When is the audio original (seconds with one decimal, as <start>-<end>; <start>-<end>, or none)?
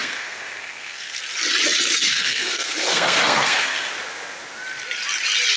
1.2-1.9; 3.9-5.6